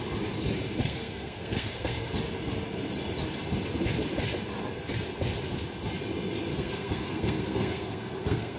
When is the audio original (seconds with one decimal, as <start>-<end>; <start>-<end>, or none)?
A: 0.0-0.8; 2.1-6.5